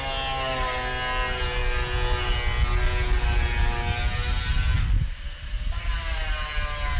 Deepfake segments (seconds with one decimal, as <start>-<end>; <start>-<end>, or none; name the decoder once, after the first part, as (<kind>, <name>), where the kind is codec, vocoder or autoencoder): none